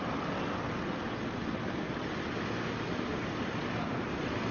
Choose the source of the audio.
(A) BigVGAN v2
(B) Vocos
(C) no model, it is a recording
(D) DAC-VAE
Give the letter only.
C